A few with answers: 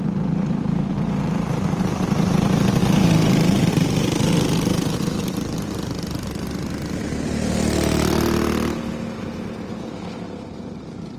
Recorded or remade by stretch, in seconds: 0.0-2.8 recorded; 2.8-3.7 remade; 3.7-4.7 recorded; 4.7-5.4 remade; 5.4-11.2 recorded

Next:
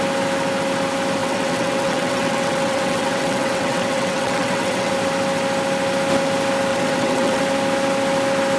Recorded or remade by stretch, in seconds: 0.0-1.2 recorded; 1.2-4.9 remade; 4.9-6.7 recorded; 6.7-7.4 remade; 7.4-8.6 recorded

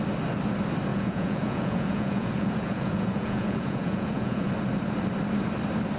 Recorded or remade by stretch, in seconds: 0.0-0.9 recorded; 0.9-4.5 remade; 4.5-6.0 recorded

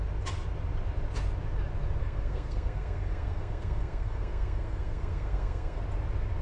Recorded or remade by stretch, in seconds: 0.0-2.0 recorded; 2.0-5.8 remade; 5.8-6.4 recorded

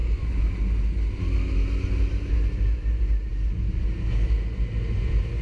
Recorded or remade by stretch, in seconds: 0.0-0.5 remade; 0.5-5.4 recorded

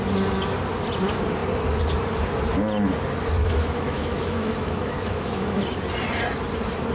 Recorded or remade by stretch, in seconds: 0.0-3.4 recorded; 3.4-5.6 remade; 5.6-6.9 recorded

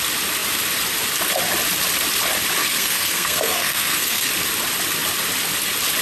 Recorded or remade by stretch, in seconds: 0.0-2.6 recorded; 2.6-4.3 remade; 4.3-6.0 recorded

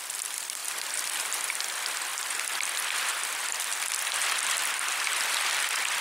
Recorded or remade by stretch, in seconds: 0.0-0.6 recorded; 0.6-1.4 remade; 1.4-6.0 recorded